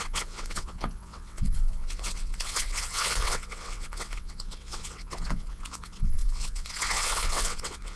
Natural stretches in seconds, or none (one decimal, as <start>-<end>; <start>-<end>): none